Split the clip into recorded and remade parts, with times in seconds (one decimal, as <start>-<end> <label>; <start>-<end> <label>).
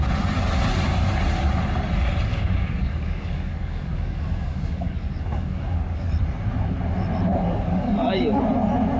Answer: 0.0-2.3 recorded; 2.3-6.1 remade; 6.1-7.3 recorded; 7.3-8.4 remade; 8.4-9.0 recorded